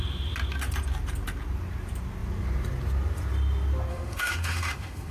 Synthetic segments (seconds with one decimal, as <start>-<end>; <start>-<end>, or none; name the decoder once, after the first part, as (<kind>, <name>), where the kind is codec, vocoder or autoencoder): 3.9-5.1 (autoencoder, DAC-VAE)